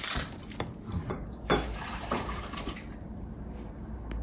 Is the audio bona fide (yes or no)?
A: no